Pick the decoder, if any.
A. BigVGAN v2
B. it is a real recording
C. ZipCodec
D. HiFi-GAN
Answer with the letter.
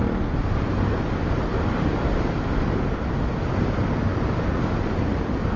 B